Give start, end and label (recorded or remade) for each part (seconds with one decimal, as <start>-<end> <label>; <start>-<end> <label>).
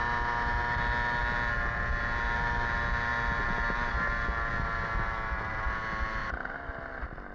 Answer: 0.0-6.2 recorded; 6.2-6.7 remade; 6.7-7.3 recorded